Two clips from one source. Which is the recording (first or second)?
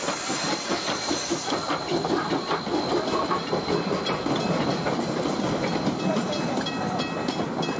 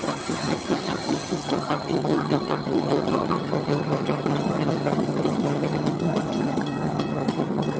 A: first